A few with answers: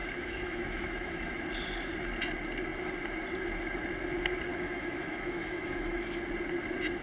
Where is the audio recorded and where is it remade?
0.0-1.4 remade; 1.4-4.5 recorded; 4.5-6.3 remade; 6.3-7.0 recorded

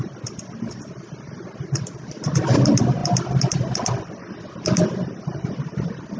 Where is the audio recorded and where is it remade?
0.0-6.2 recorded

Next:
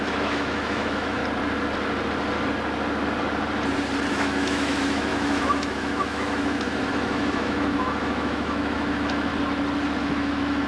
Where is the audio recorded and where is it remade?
0.0-1.2 remade; 1.2-4.1 recorded; 4.1-9.3 remade; 9.3-10.0 recorded; 10.0-10.7 remade